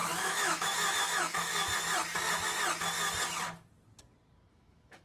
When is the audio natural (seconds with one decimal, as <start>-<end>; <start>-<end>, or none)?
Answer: 1.5-4.5